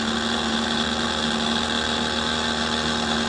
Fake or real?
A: real